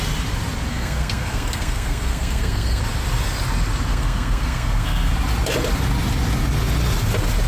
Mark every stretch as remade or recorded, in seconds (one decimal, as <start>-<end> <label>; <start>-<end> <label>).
0.0-0.7 recorded; 0.7-2.8 remade; 2.8-3.9 recorded; 3.9-5.1 remade; 5.1-7.5 recorded